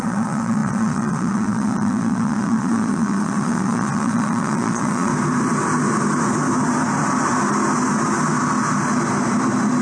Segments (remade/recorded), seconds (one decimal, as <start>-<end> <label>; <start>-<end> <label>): 0.0-5.1 remade; 5.1-9.8 recorded